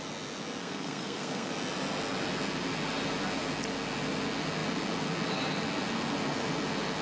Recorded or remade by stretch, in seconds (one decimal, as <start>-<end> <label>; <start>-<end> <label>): 0.0-0.6 recorded; 0.6-1.5 remade; 1.5-7.0 recorded